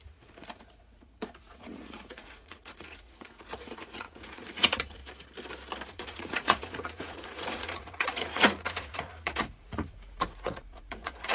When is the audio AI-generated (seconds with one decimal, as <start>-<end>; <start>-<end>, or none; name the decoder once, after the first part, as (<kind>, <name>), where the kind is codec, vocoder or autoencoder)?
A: 0.0-5.0 (vocoder, Vocos); 5.9-11.3